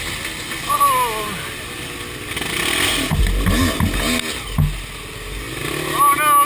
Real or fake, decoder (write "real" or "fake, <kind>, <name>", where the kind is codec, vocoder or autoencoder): real